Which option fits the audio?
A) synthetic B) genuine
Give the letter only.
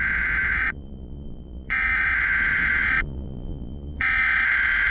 A